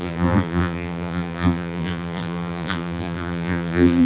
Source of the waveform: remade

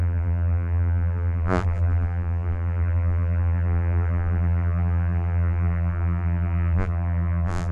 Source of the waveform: remade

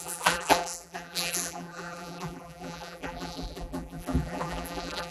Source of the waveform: remade